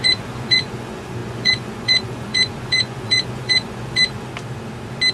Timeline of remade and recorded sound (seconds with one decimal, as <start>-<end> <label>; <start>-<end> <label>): 0.0-4.3 remade; 4.3-5.1 recorded